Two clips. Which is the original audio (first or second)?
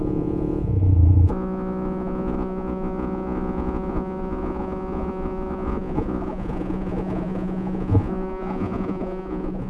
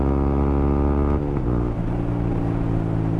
second